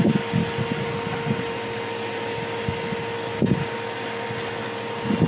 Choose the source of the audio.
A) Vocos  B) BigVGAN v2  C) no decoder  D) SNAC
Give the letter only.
C